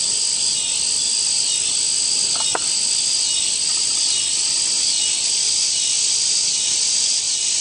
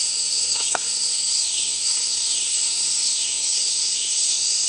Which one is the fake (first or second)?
second